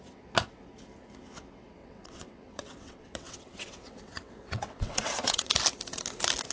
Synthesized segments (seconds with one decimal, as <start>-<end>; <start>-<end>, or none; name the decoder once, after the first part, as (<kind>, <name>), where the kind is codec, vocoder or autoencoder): 1.8-5.5 (vocoder, WaveNeXt)